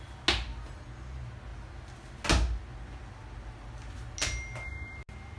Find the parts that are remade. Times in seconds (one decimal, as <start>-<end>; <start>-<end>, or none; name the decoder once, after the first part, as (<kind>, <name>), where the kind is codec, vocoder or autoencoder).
none